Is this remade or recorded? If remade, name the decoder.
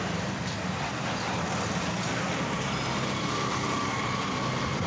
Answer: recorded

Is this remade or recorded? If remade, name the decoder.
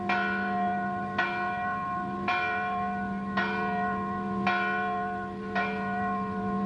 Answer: recorded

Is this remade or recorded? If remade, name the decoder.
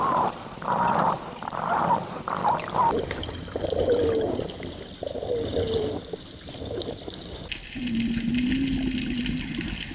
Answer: recorded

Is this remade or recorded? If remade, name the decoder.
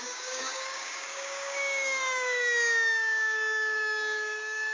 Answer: remade, codec, DAC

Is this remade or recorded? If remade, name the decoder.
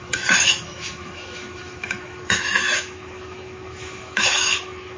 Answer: remade, autoencoder, DAC-VAE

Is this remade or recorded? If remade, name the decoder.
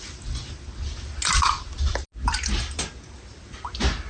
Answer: recorded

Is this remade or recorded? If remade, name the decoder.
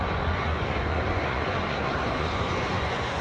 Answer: remade, vocoder, Vocos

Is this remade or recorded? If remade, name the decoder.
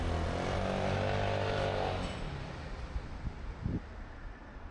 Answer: recorded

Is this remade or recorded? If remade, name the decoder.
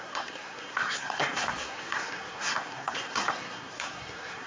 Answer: remade, codec, SNAC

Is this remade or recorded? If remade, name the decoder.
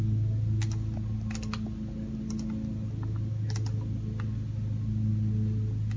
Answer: recorded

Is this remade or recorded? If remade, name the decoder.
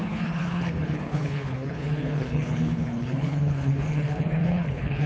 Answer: remade, codec, HILCodec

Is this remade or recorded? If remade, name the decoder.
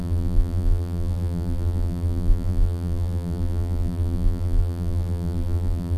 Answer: remade, vocoder, BigVGAN v2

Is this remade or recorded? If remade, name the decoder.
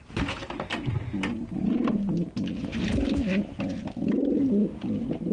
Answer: recorded